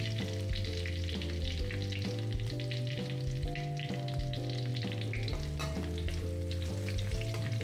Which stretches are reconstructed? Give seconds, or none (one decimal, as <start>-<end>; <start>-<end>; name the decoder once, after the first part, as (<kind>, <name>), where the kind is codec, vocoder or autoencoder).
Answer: none